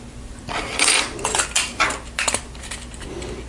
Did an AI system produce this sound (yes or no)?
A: no